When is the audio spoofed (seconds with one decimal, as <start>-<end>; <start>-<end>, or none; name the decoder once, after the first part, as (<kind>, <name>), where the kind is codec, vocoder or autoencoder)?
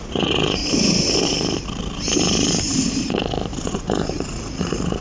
0.0-0.6 (vocoder, Vocos); 3.6-5.0